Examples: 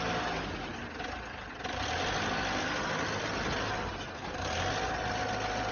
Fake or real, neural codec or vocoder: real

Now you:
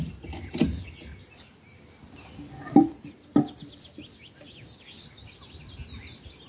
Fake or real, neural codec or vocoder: real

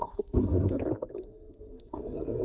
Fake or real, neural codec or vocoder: fake, codec, SNAC